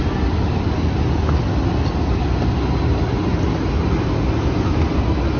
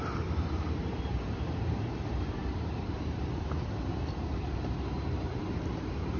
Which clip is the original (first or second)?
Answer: first